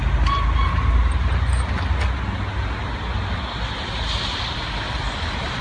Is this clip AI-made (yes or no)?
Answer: no